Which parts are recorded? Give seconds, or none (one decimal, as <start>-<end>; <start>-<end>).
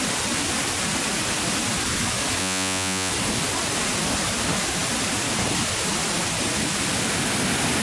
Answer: 0.0-2.4; 3.1-7.8